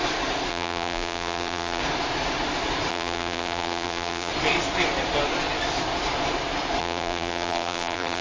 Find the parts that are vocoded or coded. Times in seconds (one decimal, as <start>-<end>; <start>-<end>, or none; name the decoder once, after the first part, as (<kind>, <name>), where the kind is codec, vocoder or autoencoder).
0.5-1.8 (vocoder, BigVGAN v2); 2.9-4.3; 6.8-8.2